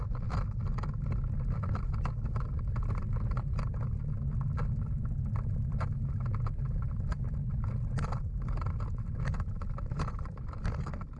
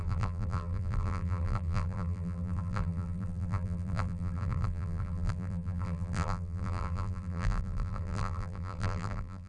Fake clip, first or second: second